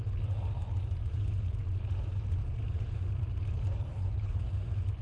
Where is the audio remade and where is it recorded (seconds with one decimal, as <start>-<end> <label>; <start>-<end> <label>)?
0.0-3.9 recorded; 3.9-4.4 remade; 4.4-5.0 recorded